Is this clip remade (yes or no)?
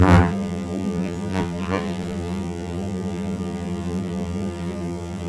yes